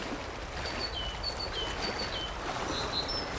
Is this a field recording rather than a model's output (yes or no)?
yes